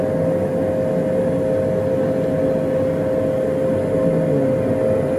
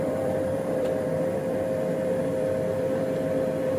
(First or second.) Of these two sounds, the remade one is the second